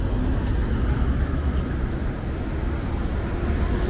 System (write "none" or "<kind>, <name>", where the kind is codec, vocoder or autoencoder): none